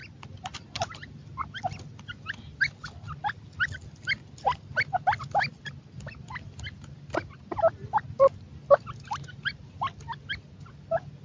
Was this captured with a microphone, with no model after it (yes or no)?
yes